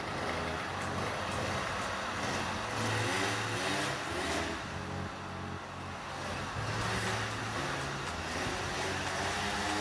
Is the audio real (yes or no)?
yes